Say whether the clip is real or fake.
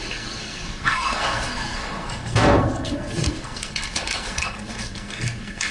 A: fake